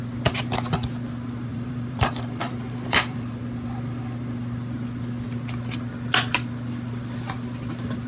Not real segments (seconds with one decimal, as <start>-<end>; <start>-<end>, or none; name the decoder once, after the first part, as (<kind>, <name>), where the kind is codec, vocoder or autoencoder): 1.5-3.4 (vocoder, BigVGAN v2)